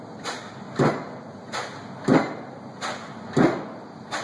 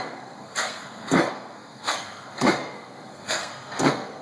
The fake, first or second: second